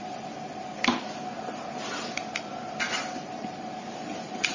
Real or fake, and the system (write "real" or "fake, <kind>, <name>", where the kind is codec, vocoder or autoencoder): real